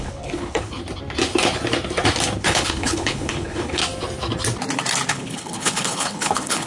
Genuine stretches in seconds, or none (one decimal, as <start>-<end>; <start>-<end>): 0.8-2.4; 3.8-5.1